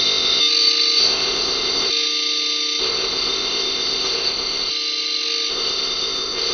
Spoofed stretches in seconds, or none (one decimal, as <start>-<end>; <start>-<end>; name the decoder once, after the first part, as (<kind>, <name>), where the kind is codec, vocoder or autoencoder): 0.0-0.4 (codec, ZipCodec); 1.0-1.9; 2.8-4.7; 5.5-6.5